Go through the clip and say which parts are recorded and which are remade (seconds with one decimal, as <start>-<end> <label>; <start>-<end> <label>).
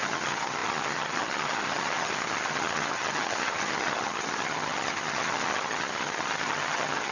0.0-7.1 remade